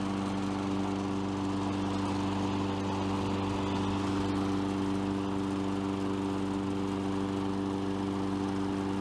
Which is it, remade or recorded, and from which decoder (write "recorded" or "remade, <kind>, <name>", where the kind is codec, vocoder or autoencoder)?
recorded